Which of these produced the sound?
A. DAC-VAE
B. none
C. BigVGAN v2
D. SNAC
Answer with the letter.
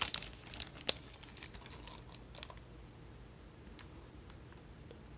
B